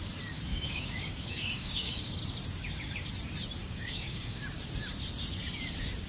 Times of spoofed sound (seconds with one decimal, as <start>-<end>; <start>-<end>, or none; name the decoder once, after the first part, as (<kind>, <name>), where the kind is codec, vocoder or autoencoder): 0.5-2.2 (codec, DAC); 3.6-4.4